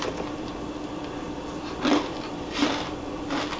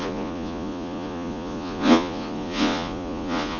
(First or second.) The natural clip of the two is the first